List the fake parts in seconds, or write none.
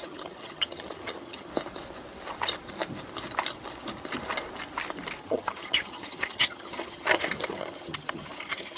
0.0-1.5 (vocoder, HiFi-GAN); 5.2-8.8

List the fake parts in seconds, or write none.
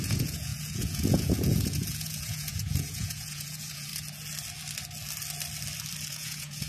0.0-3.9 (vocoder, Vocos); 6.1-6.7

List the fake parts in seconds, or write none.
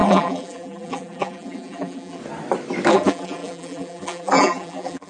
0.0-2.2 (vocoder, BigVGAN v2); 2.9-5.1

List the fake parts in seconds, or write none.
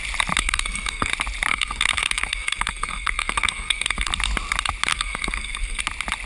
0.4-1.1 (codec, SNAC); 1.5-4.1; 4.9-5.8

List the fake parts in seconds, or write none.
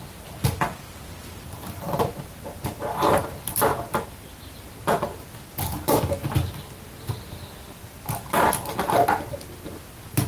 none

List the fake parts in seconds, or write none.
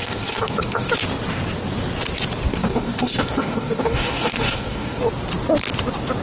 0.0-0.9 (codec, DAC); 2.6-5.0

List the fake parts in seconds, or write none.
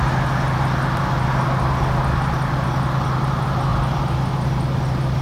none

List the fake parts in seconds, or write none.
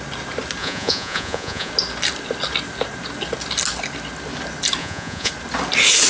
0.6-1.7 (vocoder, Vocos); 4.8-5.3